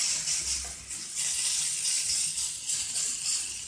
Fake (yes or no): yes